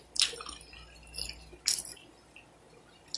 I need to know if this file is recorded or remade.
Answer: recorded